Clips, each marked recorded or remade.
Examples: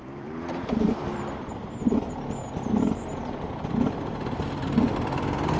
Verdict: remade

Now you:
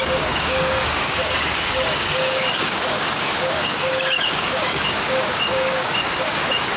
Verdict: remade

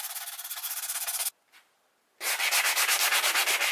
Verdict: recorded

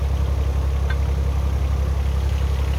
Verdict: recorded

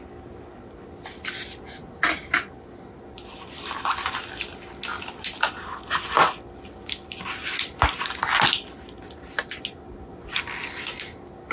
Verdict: recorded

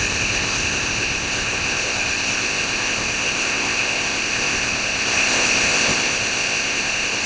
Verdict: remade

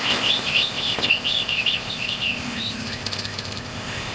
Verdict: remade